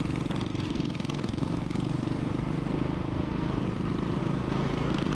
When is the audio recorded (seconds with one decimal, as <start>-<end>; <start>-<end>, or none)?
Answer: 0.0-0.5; 3.6-4.2